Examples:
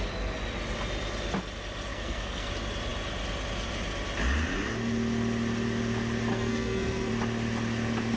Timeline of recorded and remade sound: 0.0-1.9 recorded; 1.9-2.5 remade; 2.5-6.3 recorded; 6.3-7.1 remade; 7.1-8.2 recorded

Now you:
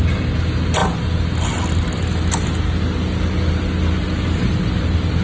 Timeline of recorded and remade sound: 0.0-5.2 recorded

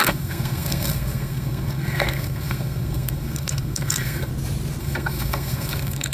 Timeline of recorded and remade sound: 0.0-4.3 remade; 4.3-4.8 recorded; 4.8-6.1 remade